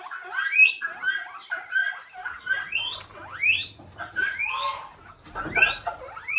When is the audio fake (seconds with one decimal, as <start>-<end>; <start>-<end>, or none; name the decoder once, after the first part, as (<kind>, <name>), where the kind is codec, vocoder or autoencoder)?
none